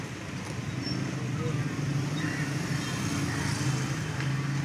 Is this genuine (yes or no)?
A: yes